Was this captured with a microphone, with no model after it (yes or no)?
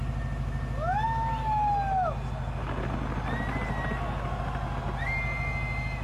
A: yes